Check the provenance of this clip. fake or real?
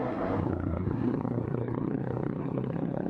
fake